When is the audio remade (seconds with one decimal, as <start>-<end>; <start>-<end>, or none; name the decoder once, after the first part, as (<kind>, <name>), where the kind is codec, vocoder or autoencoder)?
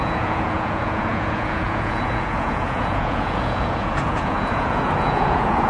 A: 0.0-5.7 (vocoder, Vocos)